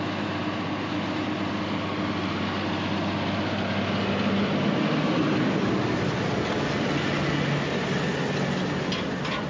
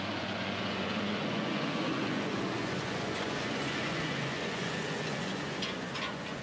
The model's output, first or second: second